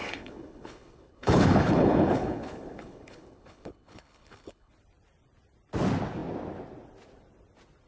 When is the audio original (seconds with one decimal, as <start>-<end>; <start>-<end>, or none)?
4.7-7.9